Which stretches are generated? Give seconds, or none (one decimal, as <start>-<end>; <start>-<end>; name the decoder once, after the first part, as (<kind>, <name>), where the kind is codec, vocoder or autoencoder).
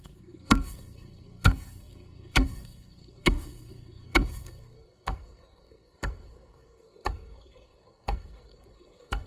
0.0-9.3 (codec, SNAC)